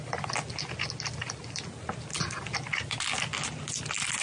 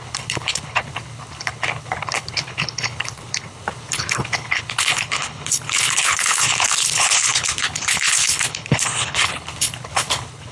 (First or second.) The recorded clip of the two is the first